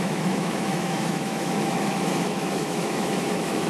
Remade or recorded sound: remade